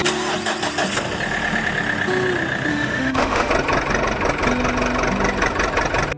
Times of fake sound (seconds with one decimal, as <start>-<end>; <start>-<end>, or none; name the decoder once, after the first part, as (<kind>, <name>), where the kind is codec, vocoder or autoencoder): 2.7-3.5 (autoencoder, DAC-VAE)